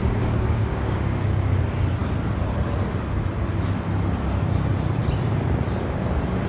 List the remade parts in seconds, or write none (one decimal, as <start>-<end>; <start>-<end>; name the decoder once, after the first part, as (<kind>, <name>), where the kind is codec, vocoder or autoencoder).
0.0-1.6 (codec, DAC)